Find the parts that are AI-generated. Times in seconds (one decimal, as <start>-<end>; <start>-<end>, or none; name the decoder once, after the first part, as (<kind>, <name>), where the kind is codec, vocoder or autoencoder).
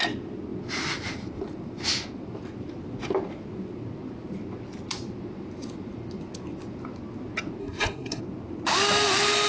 7.6-8.2 (codec, SNAC)